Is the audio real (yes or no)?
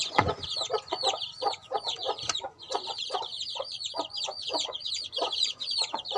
no